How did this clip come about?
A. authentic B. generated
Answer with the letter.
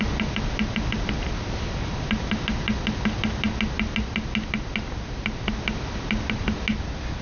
A